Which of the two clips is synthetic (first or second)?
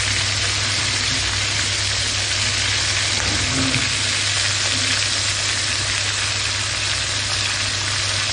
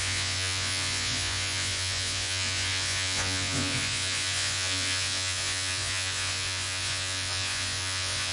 second